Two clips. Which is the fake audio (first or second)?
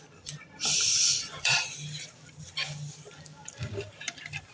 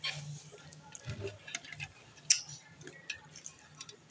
first